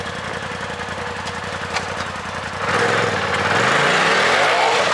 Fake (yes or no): no